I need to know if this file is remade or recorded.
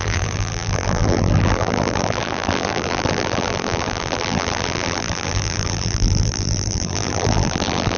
remade